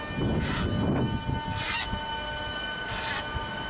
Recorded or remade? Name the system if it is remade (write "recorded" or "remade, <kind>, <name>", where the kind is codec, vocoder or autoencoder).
recorded